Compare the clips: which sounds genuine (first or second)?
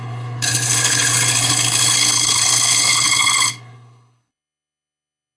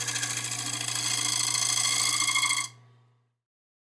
second